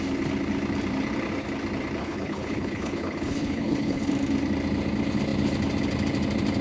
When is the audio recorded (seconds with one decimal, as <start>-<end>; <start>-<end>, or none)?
0.0-2.0; 4.1-6.6